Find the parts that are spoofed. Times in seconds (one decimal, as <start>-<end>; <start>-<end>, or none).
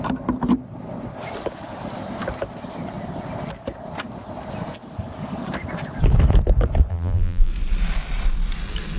6.9-7.5